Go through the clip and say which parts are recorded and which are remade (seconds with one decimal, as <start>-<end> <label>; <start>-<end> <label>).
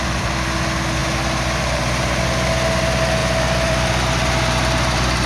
0.0-1.0 recorded; 1.0-2.2 remade; 2.2-3.2 recorded; 3.2-5.3 remade